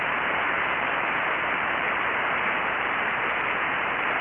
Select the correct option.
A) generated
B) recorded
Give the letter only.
A